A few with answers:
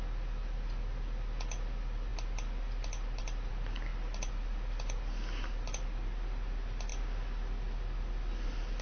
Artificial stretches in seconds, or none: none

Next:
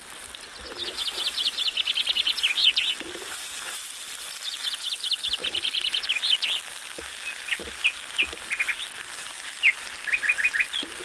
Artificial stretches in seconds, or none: 5.4-6.0 (vocoder, BigVGAN v2)

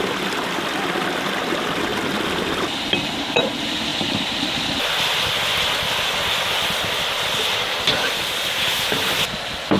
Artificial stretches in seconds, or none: 1.9-3.1 (vocoder, BigVGAN v2); 3.9-5.6

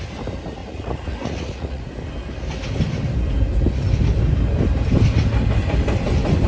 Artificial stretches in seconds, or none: 0.6-1.8 (vocoder, Vocos)